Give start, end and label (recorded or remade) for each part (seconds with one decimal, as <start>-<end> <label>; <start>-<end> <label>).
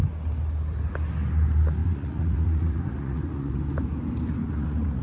0.0-1.8 recorded; 1.8-3.6 remade; 3.6-4.4 recorded; 4.4-5.0 remade